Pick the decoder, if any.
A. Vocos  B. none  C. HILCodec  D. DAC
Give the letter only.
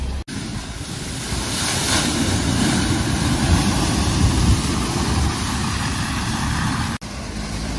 B